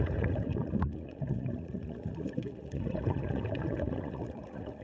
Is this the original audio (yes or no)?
no